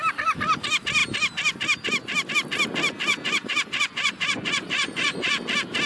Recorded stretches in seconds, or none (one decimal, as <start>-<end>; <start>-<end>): 0.0-3.1; 5.4-5.9